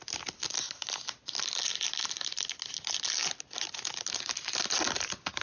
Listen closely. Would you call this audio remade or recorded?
recorded